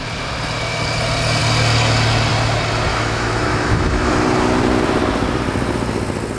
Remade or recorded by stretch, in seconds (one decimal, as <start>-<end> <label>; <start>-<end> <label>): 0.0-2.9 recorded; 2.9-4.1 remade; 4.1-6.4 recorded